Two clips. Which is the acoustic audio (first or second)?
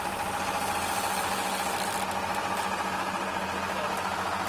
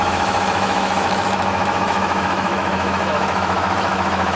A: first